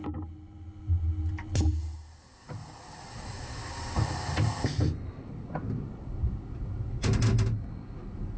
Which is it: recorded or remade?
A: recorded